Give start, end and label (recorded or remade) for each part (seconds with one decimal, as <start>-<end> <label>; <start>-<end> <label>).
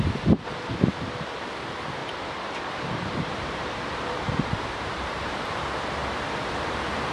0.0-2.0 recorded; 2.0-5.3 remade; 5.3-7.1 recorded